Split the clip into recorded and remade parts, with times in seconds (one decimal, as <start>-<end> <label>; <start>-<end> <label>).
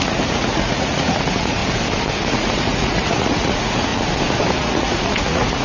0.0-1.6 remade; 1.6-2.3 recorded; 2.3-3.9 remade; 3.9-4.5 recorded; 4.5-5.6 remade